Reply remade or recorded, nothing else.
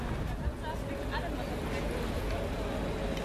recorded